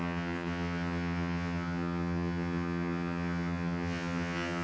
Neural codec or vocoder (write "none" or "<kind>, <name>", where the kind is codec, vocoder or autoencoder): vocoder, HiFi-GAN